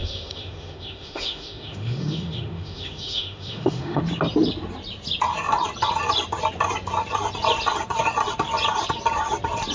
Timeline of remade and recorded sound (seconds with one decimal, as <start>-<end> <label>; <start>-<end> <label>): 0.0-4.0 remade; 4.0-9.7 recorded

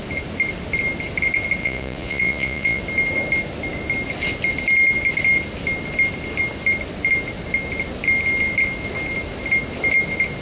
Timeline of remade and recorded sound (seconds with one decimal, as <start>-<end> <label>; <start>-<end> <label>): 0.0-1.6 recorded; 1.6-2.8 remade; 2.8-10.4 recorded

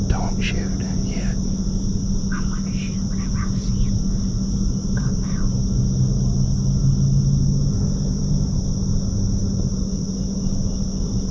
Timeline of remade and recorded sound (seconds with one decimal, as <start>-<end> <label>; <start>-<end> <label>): 0.0-11.3 recorded

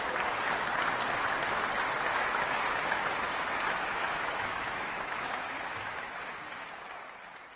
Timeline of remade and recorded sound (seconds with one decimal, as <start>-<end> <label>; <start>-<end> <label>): 0.0-2.1 recorded; 2.1-6.7 remade; 6.7-7.6 recorded

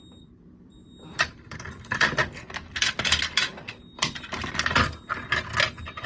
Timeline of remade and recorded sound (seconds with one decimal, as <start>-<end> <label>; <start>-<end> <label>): 0.0-2.2 remade; 2.2-2.7 recorded; 2.7-3.5 remade; 3.5-5.6 recorded; 5.6-6.1 remade

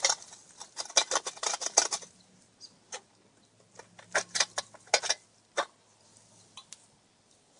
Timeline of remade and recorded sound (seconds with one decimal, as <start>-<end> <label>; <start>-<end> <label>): 0.0-7.6 recorded